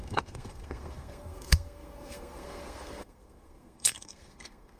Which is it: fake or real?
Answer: fake